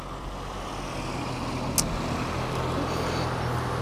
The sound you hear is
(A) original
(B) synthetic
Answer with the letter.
A